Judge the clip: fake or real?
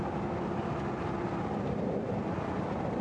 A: real